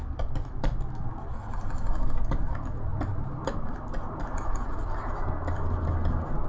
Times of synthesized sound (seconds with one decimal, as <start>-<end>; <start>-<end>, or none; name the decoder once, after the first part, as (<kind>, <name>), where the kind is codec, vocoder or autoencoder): none